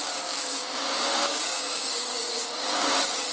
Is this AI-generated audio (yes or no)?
yes